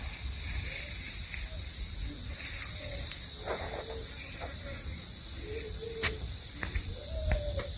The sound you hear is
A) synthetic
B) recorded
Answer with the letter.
B